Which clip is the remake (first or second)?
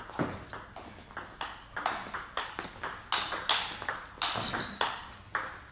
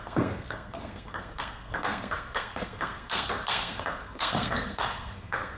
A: second